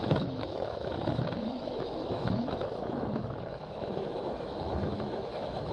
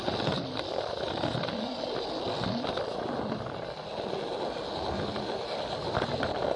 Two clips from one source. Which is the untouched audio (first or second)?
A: second